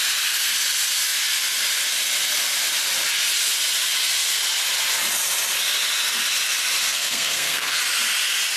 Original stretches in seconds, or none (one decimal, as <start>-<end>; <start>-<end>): 0.0-6.9; 7.8-8.6